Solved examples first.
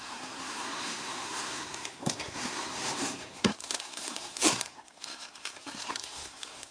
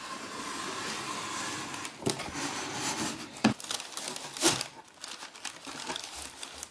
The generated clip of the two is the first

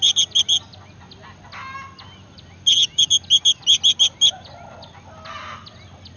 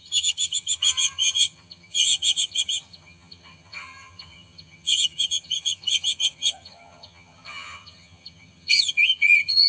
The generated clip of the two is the second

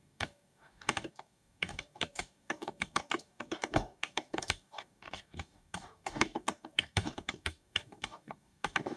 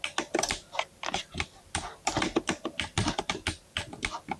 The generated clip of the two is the first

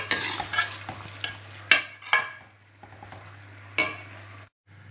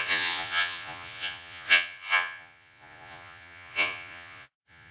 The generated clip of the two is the second